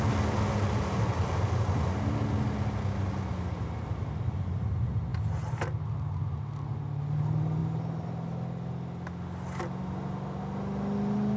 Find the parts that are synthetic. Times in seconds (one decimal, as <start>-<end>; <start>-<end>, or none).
none